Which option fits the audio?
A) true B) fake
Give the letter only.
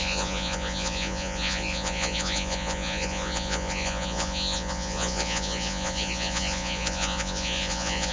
B